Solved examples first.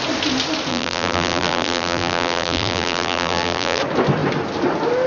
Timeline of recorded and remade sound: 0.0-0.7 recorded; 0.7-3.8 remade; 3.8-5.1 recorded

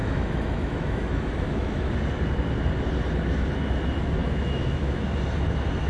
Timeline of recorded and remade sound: 0.0-1.9 remade; 1.9-4.2 recorded; 4.2-5.0 remade; 5.0-5.9 recorded

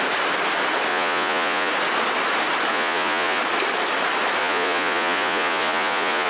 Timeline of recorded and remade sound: 0.0-0.9 recorded; 0.9-1.7 remade; 1.7-2.7 recorded; 2.7-3.4 remade; 3.4-4.4 recorded; 4.4-6.3 remade

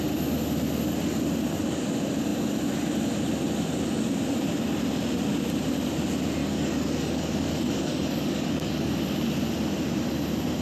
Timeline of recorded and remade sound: 0.0-6.4 recorded; 6.4-8.9 remade; 8.9-10.6 recorded

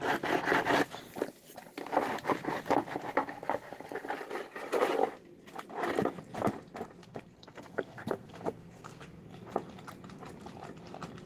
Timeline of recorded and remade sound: 0.0-7.0 recorded; 7.0-9.3 remade; 9.3-11.3 recorded

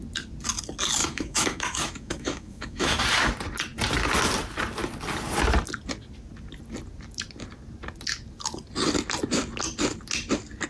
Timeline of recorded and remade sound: 0.0-1.0 recorded; 1.0-3.0 remade; 3.0-10.7 recorded